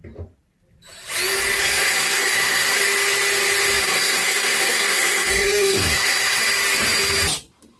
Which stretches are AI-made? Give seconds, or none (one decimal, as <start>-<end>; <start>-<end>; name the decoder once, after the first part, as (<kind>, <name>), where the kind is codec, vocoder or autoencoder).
1.6-2.8 (codec, SNAC); 3.8-6.4